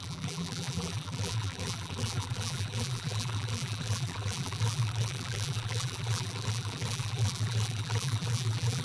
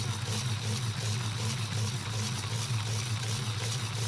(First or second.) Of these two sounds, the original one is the second